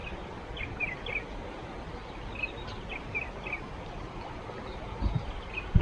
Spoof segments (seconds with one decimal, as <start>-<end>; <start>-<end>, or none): 0.0-1.0